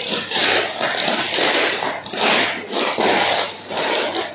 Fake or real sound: real